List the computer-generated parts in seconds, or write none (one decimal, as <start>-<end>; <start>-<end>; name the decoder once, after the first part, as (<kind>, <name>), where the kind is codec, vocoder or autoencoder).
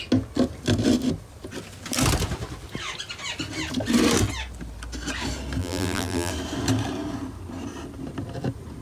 5.6-6.3 (vocoder, BigVGAN v2)